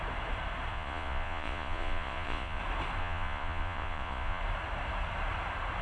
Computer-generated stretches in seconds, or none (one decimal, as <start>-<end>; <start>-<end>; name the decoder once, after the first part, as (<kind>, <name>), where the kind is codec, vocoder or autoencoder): 0.7-2.6 (vocoder, Vocos); 3.0-4.4